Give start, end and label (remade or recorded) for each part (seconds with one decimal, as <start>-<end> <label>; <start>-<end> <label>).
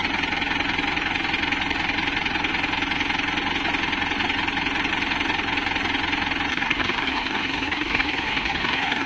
0.0-6.5 recorded; 6.5-9.1 remade